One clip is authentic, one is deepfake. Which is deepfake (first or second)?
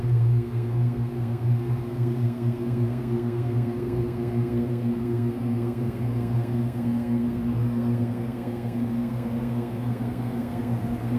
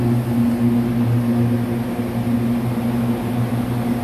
first